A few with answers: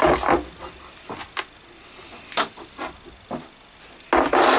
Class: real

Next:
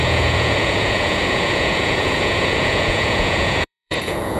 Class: fake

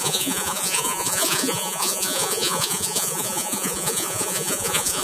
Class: fake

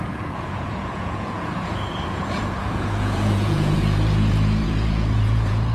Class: fake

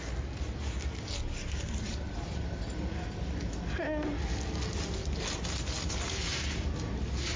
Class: real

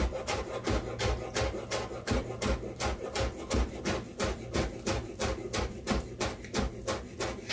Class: real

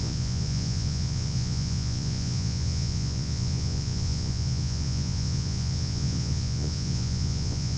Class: fake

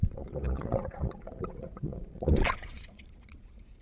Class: fake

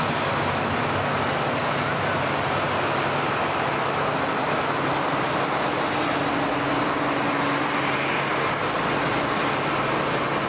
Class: real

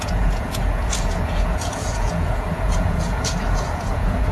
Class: fake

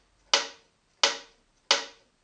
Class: real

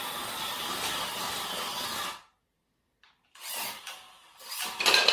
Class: real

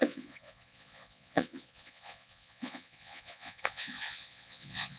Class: fake